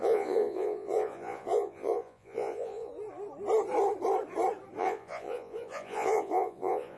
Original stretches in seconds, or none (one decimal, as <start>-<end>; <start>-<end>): 2.9-4.8